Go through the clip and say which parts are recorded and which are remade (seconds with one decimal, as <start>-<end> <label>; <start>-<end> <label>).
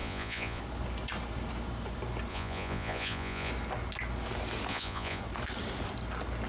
0.0-0.6 remade; 0.6-2.3 recorded; 2.3-3.5 remade; 3.5-4.7 recorded; 4.7-5.2 remade; 5.2-6.5 recorded